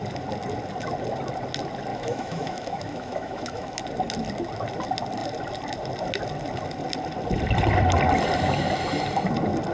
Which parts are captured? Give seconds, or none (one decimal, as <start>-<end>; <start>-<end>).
0.0-1.9; 3.8-9.7